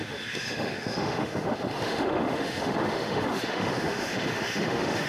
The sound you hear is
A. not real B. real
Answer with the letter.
A